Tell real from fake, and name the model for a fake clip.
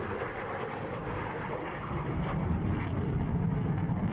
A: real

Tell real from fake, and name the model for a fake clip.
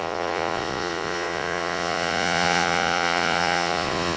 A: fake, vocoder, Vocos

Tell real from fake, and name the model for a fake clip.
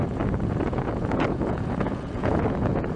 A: fake, vocoder, Vocos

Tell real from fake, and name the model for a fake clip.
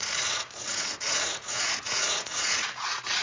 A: fake, vocoder, Vocos